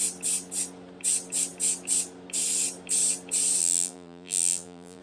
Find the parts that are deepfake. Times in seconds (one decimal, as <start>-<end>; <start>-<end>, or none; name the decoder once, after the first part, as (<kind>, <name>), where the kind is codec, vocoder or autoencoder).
3.6-5.0 (vocoder, BigVGAN v2)